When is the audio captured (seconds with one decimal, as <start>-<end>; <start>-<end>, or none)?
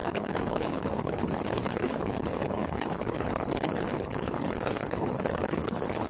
none